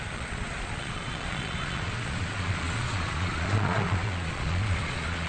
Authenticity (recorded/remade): remade